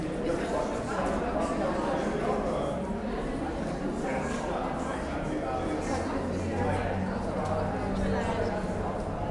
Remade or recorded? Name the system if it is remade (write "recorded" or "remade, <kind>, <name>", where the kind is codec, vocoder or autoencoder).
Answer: recorded